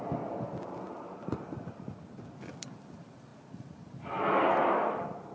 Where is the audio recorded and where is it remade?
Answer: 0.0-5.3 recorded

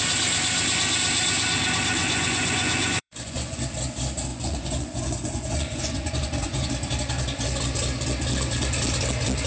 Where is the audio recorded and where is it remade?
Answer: 0.0-2.0 recorded; 2.0-3.6 remade; 3.6-4.3 recorded; 4.3-6.7 remade; 6.7-9.5 recorded

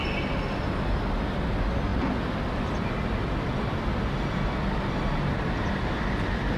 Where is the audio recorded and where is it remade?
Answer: 0.0-6.6 recorded

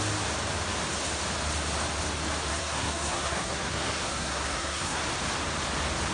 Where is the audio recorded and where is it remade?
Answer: 0.0-2.5 recorded; 2.5-5.0 remade; 5.0-6.1 recorded

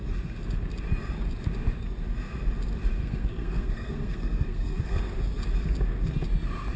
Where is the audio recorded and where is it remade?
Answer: 0.0-3.0 recorded; 3.0-5.0 remade; 5.0-6.8 recorded

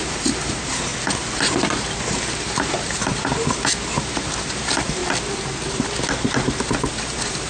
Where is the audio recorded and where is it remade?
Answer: 0.0-0.9 remade; 0.9-2.4 recorded; 2.4-3.3 remade; 3.3-3.9 recorded; 3.9-5.0 remade; 5.0-7.0 recorded; 7.0-7.5 remade

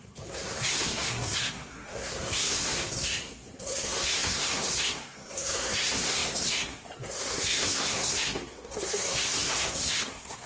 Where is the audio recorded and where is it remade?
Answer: 0.0-10.5 remade